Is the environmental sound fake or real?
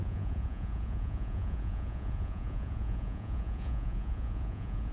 fake